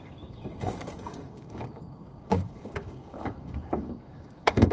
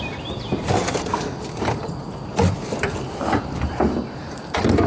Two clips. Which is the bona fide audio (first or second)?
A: second